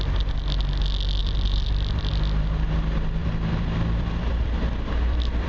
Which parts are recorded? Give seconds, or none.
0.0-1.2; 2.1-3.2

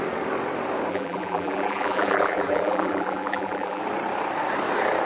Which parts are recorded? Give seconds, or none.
0.0-0.9; 3.8-5.1

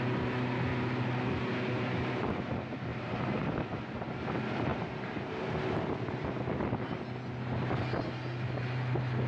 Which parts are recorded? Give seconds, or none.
0.0-2.9; 3.5-9.3

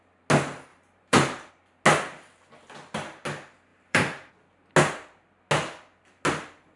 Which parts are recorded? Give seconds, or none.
0.0-0.7; 1.5-3.7; 4.3-6.8